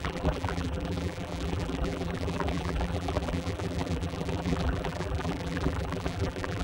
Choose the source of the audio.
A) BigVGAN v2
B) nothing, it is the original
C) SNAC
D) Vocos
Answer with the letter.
A